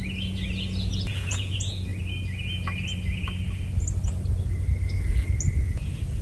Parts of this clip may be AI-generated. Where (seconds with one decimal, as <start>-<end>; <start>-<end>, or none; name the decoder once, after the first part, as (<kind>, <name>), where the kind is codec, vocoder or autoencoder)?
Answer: 0.0-1.9 (vocoder, Vocos); 5.6-6.2

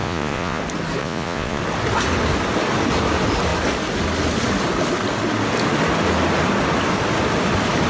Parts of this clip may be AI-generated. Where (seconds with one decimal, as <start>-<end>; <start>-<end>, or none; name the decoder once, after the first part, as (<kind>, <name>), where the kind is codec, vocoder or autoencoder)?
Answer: 0.0-0.6 (vocoder, Vocos); 1.0-1.6

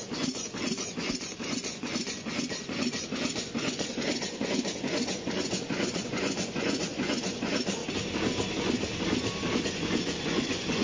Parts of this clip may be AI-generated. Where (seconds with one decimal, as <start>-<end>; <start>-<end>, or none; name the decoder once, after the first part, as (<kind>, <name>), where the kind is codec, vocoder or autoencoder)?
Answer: 0.0-7.8 (vocoder, Vocos); 9.6-10.8